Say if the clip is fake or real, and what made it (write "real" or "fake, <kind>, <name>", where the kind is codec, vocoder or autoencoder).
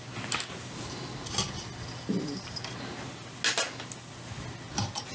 real